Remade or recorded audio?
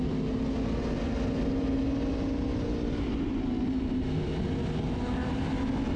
recorded